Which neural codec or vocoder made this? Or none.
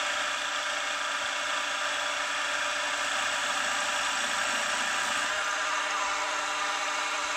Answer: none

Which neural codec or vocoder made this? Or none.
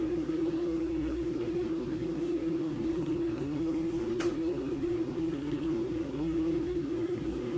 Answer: codec, SNAC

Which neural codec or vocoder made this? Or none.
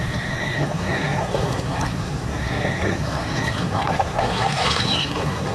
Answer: codec, SNAC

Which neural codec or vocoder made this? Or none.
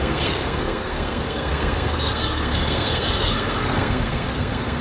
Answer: codec, SNAC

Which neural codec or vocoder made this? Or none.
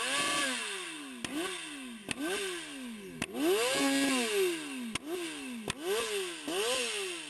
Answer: none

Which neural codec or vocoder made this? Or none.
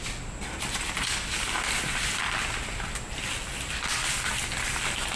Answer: none